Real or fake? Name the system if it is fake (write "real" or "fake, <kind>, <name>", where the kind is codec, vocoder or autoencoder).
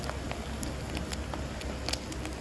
real